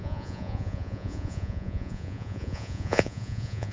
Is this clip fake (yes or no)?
yes